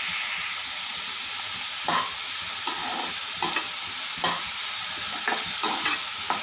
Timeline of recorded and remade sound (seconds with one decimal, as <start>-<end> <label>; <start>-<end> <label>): 0.0-6.4 recorded